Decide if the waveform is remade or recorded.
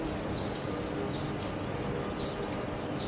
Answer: recorded